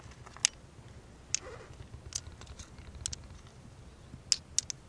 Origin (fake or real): real